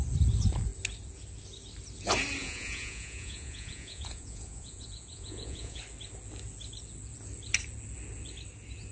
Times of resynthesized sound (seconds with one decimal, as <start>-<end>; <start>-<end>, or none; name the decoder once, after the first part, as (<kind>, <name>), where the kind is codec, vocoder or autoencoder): 2.4-5.8 (vocoder, Vocos)